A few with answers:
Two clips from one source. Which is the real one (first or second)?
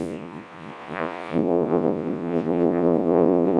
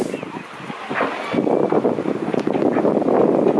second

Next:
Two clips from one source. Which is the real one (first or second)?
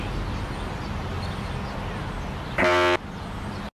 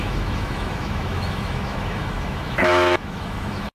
first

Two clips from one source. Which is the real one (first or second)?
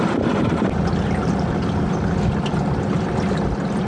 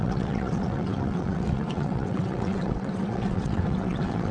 first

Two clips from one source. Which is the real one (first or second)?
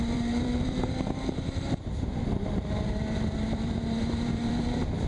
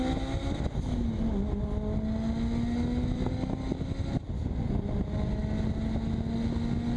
second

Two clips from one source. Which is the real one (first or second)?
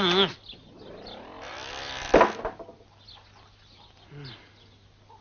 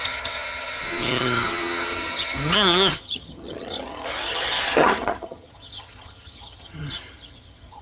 first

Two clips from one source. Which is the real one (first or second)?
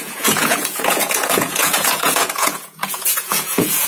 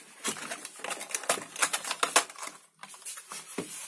second